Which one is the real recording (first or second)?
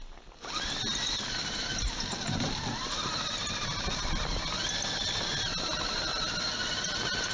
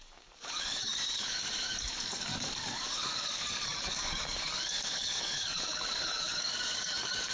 first